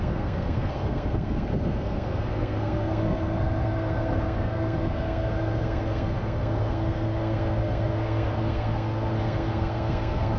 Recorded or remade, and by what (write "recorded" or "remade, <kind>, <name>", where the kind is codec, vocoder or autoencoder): remade, codec, SNAC